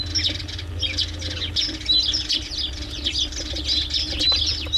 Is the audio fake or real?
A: real